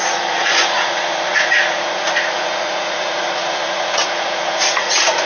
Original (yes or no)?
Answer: no